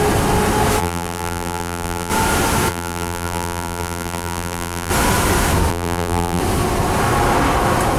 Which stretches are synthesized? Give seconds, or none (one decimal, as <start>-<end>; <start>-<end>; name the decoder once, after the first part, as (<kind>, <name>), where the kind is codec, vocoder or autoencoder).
0.8-2.1 (vocoder, BigVGAN v2); 2.7-4.9; 5.7-6.4